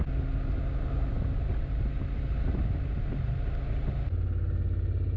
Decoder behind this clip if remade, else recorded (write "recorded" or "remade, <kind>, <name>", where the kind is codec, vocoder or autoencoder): recorded